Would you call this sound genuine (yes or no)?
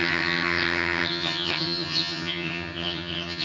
no